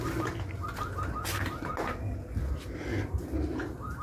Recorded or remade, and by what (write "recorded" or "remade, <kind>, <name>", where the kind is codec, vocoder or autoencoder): recorded